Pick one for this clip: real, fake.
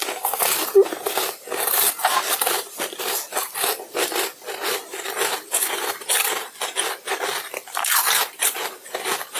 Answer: real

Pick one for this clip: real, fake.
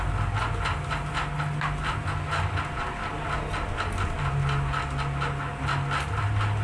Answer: real